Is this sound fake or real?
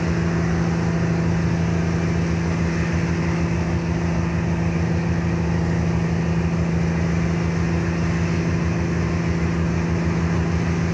real